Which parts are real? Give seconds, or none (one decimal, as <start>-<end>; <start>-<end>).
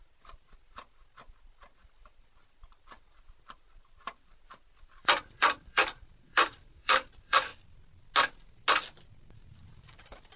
7.5-9.8